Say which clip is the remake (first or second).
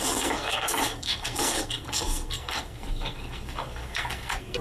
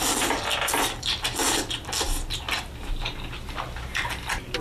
first